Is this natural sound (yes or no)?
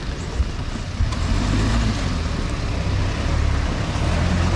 yes